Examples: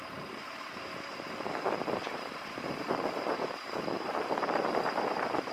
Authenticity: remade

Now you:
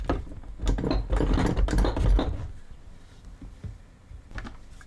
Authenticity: recorded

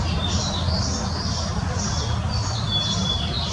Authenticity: remade